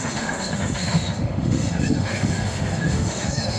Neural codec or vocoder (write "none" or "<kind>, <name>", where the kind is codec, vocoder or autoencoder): autoencoder, DAC-VAE